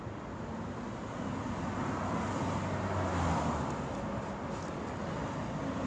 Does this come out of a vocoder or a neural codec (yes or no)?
no